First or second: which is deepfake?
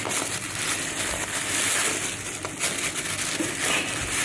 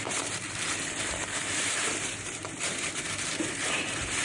second